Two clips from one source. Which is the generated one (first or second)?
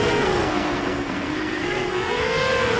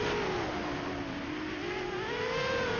first